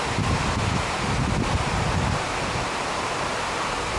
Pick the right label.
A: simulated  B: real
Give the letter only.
B